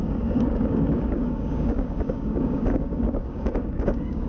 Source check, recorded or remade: remade